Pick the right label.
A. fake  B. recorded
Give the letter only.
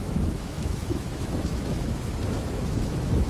A